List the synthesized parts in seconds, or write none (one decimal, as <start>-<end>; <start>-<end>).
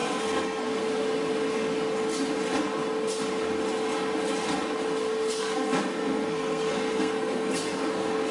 0.0-0.8; 5.4-8.3